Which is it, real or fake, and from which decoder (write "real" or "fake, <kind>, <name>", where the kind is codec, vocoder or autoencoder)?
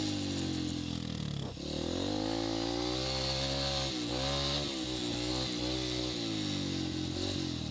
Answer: real